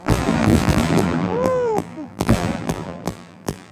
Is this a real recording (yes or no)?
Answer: no